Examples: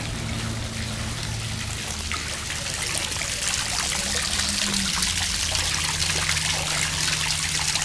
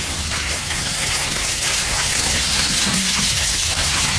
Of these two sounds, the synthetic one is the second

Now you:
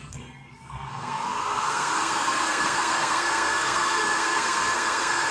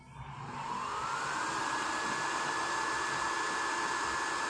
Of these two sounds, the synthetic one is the first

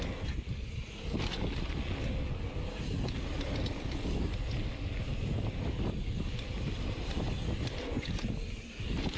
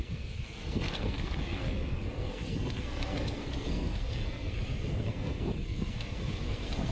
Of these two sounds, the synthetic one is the second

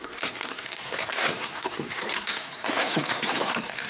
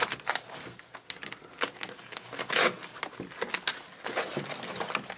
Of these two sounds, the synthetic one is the first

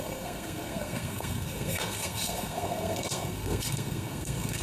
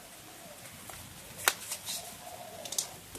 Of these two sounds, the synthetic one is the first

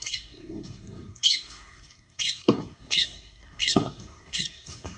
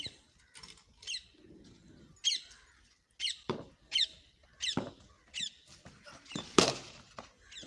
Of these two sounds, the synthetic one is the first